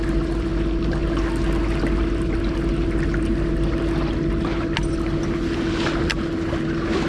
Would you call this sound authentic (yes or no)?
yes